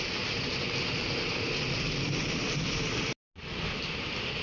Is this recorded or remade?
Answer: recorded